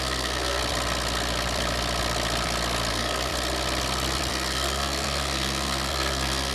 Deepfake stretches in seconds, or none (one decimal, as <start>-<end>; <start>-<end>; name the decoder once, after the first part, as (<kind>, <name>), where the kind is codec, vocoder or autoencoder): 0.0-0.6 (codec, SNAC); 2.9-3.3; 4.3-6.5